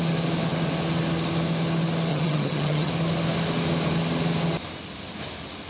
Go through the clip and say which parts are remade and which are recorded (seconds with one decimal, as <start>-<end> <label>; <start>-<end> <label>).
0.0-2.1 recorded; 2.1-2.9 remade; 2.9-5.7 recorded